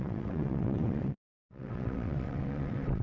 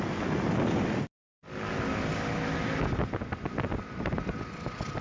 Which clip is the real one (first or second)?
second